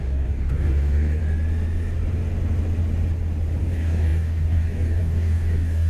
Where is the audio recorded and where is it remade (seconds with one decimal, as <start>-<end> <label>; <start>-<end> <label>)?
0.0-1.2 remade; 1.2-3.6 recorded; 3.6-5.9 remade